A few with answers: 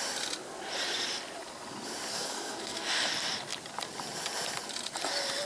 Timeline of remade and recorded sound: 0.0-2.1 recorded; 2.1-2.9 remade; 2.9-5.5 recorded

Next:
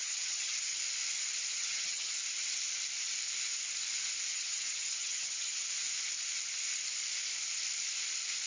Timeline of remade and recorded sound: 0.0-0.8 remade; 0.8-1.6 recorded; 1.6-2.1 remade; 2.1-4.3 recorded; 4.3-5.7 remade; 5.7-8.5 recorded

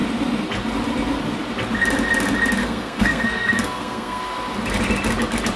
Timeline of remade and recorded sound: 0.0-2.6 recorded; 2.6-4.2 remade; 4.2-5.6 recorded